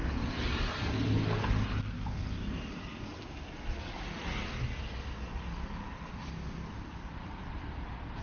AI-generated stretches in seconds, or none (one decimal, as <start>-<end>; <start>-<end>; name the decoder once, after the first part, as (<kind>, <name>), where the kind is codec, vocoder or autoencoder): 2.2-3.1 (vocoder, BigVGAN v2); 6.1-8.2

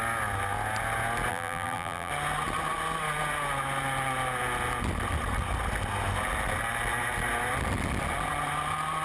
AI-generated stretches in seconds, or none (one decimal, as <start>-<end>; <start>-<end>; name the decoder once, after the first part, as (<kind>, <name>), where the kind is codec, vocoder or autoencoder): 1.3-2.1 (vocoder, BigVGAN v2)

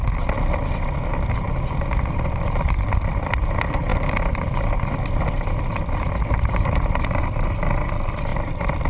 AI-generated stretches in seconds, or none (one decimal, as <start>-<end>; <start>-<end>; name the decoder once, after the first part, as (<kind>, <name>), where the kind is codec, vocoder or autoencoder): 1.1-3.4 (vocoder, BigVGAN v2); 3.9-7.2; 8.3-8.9

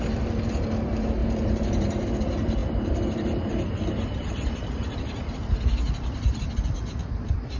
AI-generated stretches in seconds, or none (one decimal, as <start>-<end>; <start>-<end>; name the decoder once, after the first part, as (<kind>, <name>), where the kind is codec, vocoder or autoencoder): 1.2-2.1 (vocoder, BigVGAN v2)

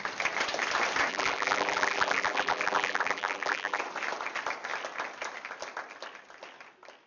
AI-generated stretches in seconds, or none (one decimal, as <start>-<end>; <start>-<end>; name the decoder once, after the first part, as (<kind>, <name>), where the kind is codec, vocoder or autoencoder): 1.1-3.8 (vocoder, BigVGAN v2)

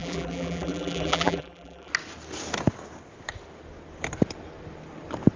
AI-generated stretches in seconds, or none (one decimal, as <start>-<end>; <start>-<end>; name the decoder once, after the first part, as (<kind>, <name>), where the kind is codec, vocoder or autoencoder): 0.0-1.9 (vocoder, BigVGAN v2)

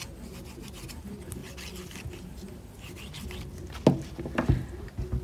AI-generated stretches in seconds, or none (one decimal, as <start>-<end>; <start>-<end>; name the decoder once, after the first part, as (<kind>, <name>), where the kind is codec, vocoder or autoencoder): none

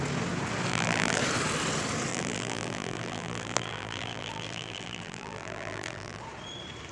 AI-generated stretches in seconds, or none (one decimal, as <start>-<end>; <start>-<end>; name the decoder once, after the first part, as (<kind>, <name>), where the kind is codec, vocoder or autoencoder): 0.7-1.2 (vocoder, BigVGAN v2); 2.1-6.2